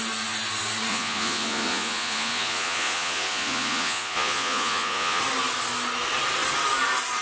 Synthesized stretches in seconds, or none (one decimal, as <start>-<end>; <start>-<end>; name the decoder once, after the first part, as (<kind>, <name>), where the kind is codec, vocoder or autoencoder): 0.9-5.2 (vocoder, Vocos)